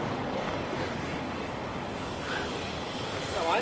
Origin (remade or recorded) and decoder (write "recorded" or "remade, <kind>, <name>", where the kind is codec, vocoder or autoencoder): remade, codec, DAC